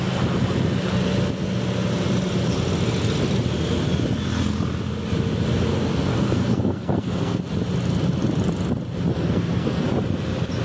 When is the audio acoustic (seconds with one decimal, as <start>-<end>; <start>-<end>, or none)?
0.0-6.1; 7.4-9.1; 9.8-10.6